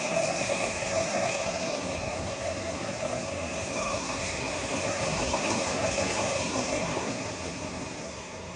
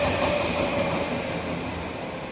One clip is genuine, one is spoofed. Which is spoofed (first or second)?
first